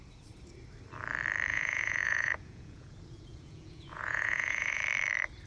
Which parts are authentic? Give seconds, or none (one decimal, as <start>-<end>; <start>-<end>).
0.0-1.5; 4.8-5.5